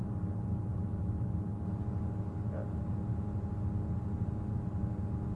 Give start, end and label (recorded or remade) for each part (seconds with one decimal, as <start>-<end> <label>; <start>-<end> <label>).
0.0-5.4 recorded